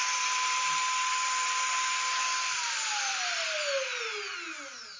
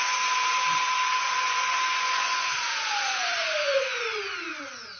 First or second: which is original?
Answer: first